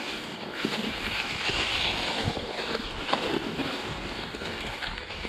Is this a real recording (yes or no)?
no